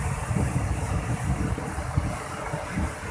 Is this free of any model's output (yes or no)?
yes